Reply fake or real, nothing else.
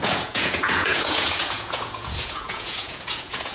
fake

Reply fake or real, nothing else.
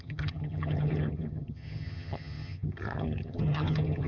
fake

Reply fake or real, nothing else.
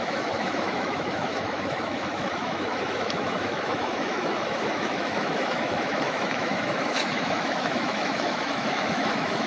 fake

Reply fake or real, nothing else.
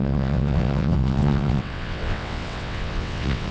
fake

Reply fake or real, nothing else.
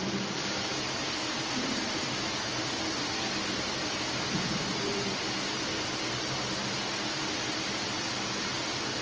real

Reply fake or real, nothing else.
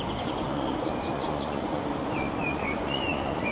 fake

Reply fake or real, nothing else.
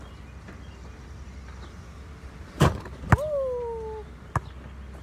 real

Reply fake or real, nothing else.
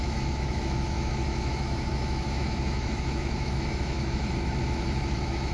fake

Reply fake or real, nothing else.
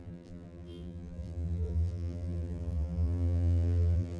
fake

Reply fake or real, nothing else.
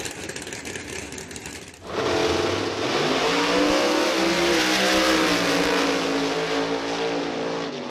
real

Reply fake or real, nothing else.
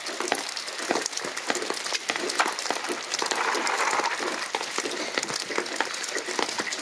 real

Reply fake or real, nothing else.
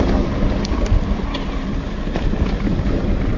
real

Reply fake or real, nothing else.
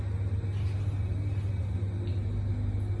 real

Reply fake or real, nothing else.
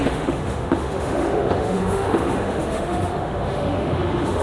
fake